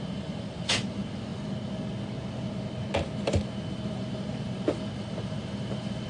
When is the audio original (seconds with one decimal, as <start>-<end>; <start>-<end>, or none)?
1.3-5.0